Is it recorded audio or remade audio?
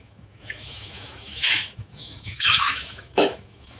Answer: remade